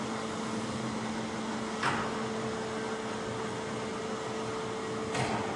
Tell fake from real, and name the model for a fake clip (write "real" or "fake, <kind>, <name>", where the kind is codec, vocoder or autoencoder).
real